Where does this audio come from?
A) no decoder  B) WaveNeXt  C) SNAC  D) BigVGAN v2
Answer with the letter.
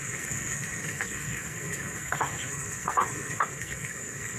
C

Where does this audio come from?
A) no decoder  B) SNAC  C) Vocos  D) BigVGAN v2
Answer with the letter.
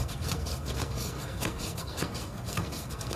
B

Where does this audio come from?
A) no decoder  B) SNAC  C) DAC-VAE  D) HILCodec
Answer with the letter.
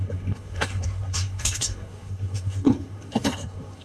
B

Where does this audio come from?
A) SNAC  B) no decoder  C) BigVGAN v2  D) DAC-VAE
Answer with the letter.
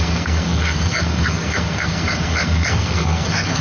A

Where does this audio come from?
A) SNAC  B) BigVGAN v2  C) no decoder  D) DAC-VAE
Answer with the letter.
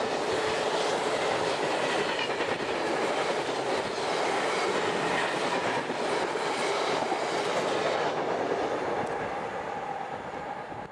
C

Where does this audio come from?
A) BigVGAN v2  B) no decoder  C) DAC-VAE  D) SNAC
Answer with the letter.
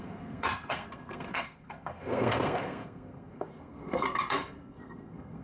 D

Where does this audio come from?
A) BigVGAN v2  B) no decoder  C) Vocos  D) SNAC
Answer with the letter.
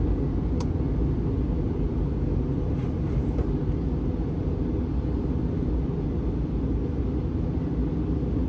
B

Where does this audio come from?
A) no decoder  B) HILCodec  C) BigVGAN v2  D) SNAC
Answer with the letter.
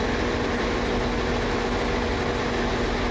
A